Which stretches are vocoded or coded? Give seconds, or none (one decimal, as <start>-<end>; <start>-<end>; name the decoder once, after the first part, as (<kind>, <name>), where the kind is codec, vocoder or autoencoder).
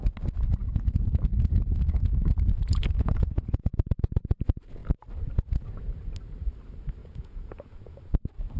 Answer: 0.6-3.7 (vocoder, Vocos); 7.0-8.0